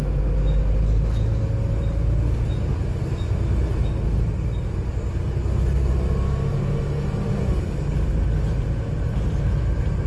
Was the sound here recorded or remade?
recorded